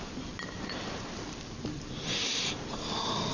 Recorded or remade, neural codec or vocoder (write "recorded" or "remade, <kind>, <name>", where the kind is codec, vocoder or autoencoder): remade, vocoder, BigVGAN v2